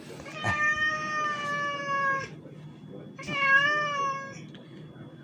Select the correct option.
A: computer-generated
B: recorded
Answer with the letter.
B